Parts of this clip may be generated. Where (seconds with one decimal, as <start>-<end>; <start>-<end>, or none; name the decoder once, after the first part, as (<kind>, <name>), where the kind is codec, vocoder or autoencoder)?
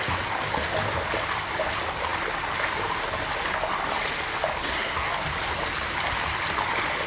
4.6-5.1 (codec, SNAC)